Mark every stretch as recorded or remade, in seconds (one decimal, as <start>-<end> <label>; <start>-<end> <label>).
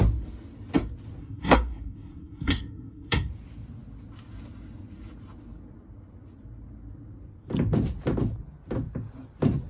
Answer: 0.0-1.2 recorded; 1.2-3.3 remade; 3.3-9.7 recorded